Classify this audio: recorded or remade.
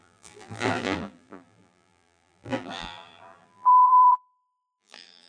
remade